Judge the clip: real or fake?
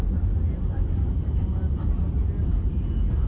fake